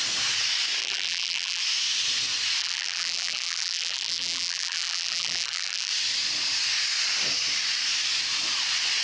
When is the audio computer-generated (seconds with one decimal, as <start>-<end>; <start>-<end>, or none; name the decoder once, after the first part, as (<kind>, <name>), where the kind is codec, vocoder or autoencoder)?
0.8-1.6 (vocoder, BigVGAN v2); 2.6-5.9